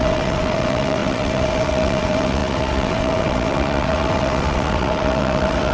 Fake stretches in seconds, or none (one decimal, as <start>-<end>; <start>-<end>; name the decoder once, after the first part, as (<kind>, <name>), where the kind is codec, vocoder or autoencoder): 0.0-5.7 (vocoder, WaveNeXt)